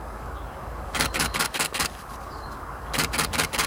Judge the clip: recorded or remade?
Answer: remade